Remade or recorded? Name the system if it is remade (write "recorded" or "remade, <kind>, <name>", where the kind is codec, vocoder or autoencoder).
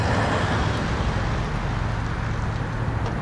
recorded